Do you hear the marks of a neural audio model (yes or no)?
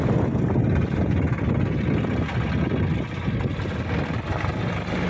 no